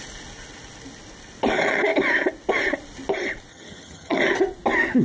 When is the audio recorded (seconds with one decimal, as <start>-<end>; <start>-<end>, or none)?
0.0-3.5; 4.2-5.0